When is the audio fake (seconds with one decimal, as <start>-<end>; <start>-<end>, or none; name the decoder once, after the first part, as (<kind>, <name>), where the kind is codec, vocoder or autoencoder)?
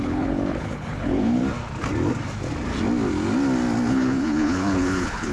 0.0-1.4 (codec, HILCodec); 3.9-5.3